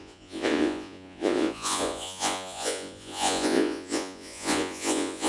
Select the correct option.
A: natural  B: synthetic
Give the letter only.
B